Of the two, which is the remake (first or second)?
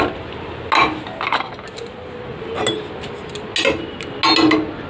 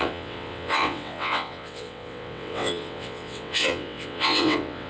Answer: second